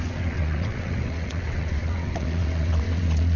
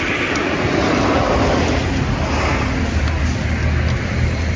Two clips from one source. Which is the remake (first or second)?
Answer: first